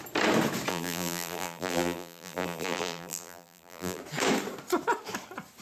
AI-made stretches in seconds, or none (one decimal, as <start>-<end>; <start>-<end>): 0.7-4.0